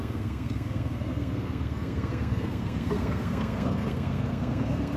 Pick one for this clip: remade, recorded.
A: remade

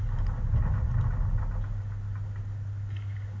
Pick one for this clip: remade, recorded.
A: recorded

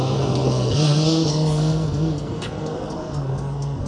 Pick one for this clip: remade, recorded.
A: remade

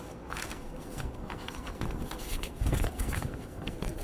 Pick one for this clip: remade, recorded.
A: remade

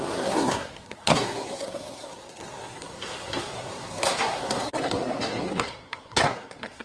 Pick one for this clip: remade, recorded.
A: remade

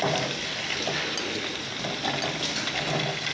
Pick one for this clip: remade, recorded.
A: recorded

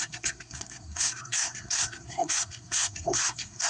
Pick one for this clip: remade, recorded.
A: remade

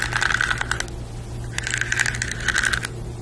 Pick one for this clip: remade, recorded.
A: recorded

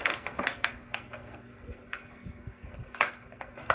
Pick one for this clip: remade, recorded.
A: remade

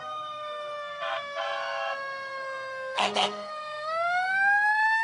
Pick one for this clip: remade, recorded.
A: remade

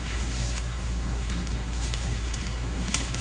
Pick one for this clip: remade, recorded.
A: remade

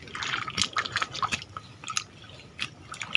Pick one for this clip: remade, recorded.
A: recorded